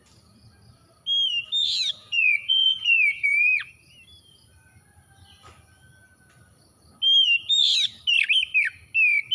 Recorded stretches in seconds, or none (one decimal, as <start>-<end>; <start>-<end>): 0.0-2.0; 3.7-9.3